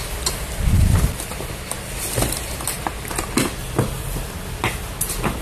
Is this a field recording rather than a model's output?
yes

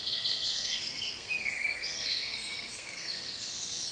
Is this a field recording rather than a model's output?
no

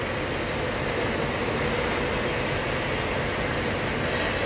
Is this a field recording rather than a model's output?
yes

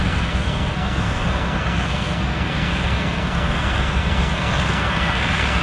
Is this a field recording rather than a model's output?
no